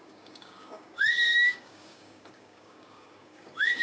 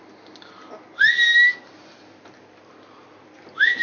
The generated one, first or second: first